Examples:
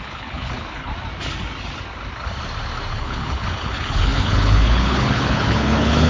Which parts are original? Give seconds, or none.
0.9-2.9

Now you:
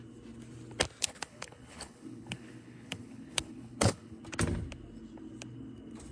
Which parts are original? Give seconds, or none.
0.0-1.0; 4.2-6.1

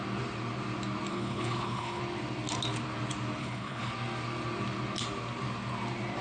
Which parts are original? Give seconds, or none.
0.0-1.1; 2.0-3.4; 3.9-6.2

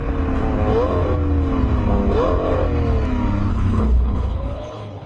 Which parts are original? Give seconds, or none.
0.0-3.5